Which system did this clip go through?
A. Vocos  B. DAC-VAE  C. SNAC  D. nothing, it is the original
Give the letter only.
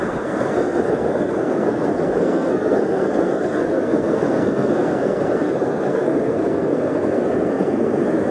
C